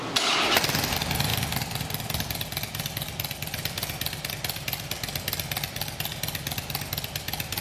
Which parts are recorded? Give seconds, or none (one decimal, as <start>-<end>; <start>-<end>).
0.0-1.3; 4.3-7.6